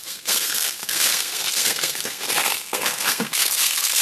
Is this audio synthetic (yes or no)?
yes